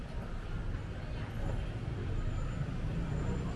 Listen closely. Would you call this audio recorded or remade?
recorded